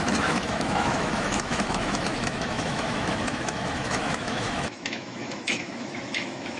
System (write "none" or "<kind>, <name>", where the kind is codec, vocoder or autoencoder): autoencoder, DAC-VAE